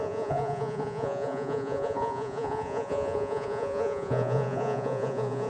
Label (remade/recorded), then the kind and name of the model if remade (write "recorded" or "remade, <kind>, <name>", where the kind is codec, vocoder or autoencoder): remade, vocoder, Vocos